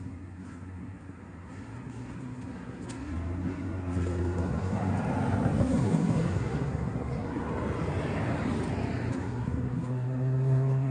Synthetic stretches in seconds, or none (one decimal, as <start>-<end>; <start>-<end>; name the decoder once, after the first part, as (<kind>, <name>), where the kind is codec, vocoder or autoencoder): 0.0-4.9 (codec, SNAC); 5.6-7.5; 9.1-10.9